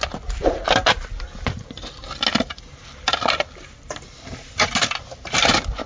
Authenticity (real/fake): real